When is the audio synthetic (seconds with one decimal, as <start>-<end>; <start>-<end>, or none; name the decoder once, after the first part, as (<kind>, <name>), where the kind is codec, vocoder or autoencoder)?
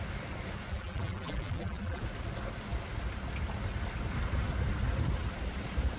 0.7-2.0 (vocoder, BigVGAN v2)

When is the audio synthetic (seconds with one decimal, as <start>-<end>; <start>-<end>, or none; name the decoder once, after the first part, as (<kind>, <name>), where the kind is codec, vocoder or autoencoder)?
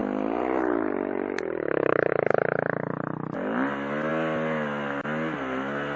0.0-2.1 (vocoder, BigVGAN v2)